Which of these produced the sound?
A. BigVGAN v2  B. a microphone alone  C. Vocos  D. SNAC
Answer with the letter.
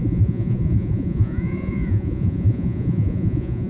C